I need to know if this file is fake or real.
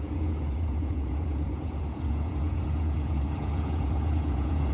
fake